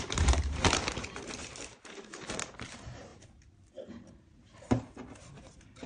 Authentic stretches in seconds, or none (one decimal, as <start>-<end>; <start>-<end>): none